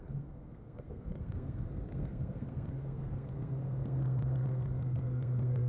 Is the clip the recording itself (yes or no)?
no